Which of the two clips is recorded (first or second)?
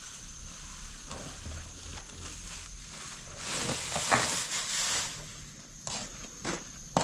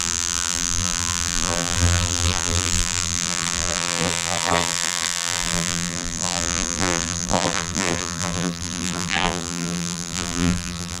first